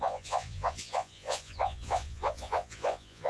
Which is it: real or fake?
fake